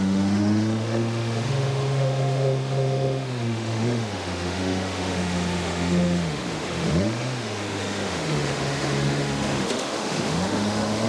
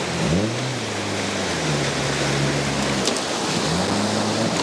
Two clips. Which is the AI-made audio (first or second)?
first